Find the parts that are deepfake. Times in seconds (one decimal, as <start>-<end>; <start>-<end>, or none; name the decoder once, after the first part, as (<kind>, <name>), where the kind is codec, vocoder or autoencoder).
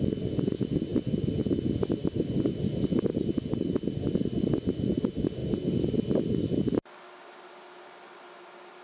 none